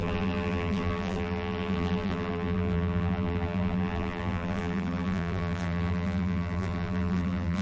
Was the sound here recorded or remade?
remade